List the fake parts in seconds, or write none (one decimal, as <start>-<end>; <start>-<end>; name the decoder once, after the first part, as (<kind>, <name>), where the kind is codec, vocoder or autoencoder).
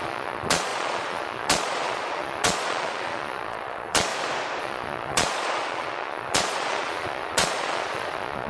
0.0-4.1 (vocoder, Vocos); 4.6-8.5